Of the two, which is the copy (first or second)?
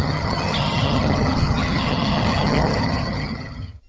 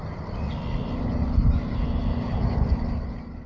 first